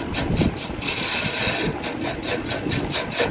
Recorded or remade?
recorded